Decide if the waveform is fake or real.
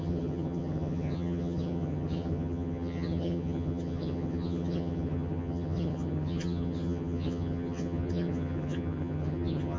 fake